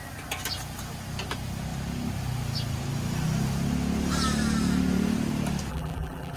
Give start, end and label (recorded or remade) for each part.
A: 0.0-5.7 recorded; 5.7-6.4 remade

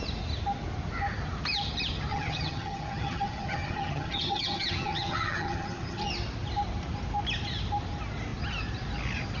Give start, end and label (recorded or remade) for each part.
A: 0.0-2.1 recorded; 2.1-6.1 remade; 6.1-9.4 recorded

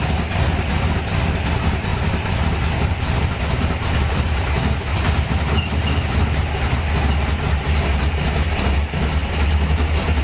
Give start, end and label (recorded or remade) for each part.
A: 0.0-10.2 recorded

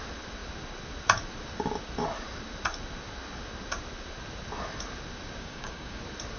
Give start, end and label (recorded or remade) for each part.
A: 0.0-5.4 recorded; 5.4-6.0 remade; 6.0-6.4 recorded

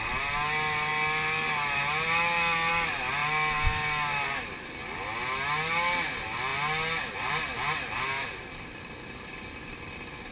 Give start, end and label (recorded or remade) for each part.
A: 0.0-10.3 recorded